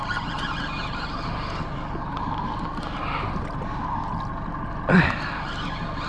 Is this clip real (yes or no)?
yes